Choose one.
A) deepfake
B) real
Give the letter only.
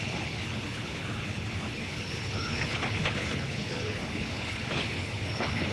A